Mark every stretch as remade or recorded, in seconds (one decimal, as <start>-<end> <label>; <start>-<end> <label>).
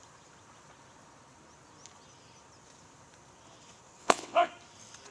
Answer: 0.0-4.0 recorded; 4.0-4.5 remade; 4.5-5.1 recorded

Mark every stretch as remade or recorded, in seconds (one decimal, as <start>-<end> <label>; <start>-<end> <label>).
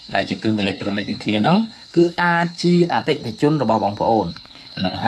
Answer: 0.0-3.2 remade; 3.2-4.3 recorded; 4.3-5.1 remade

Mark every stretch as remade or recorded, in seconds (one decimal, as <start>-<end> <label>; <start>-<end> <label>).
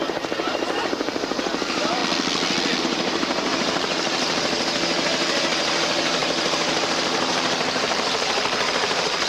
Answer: 0.0-2.0 remade; 2.0-2.8 recorded; 2.8-9.3 remade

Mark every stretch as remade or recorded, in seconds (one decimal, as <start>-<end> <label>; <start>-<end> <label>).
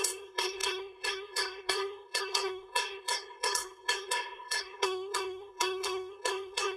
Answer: 0.0-6.8 remade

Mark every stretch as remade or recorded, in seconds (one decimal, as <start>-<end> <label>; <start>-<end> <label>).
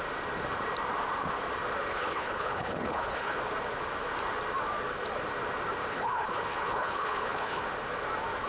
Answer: 0.0-1.9 recorded; 1.9-3.4 remade; 3.4-5.9 recorded; 5.9-7.6 remade; 7.6-8.5 recorded